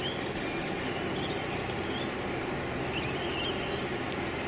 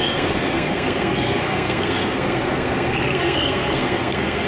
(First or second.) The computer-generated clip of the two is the second